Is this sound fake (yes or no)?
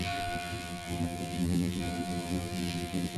yes